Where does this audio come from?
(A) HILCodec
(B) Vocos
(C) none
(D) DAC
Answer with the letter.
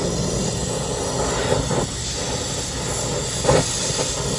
C